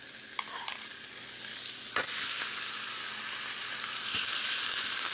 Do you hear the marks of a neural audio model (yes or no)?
no